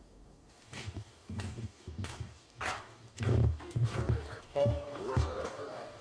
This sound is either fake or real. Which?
fake